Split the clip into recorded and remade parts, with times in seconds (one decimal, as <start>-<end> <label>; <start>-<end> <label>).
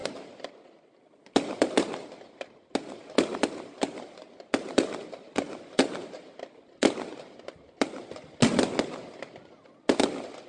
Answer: 0.0-10.5 recorded